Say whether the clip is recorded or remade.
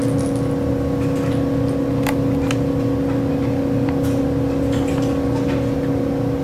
recorded